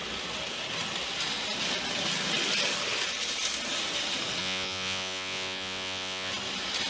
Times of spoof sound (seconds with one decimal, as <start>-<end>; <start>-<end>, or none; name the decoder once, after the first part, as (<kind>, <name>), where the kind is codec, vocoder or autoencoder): 4.4-6.3 (vocoder, Vocos)